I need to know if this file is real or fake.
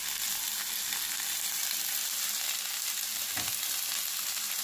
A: real